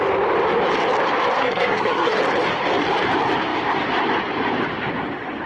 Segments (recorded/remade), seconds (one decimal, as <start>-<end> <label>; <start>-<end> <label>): 0.0-1.4 recorded; 1.4-2.2 remade; 2.2-5.5 recorded